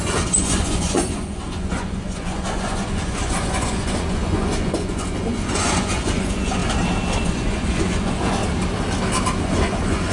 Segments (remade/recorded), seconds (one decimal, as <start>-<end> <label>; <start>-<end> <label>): 0.0-6.6 remade; 6.6-7.2 recorded; 7.2-8.4 remade; 8.4-9.4 recorded; 9.4-10.1 remade